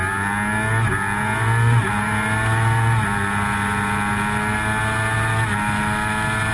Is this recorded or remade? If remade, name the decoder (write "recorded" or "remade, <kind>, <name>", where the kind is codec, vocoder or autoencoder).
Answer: recorded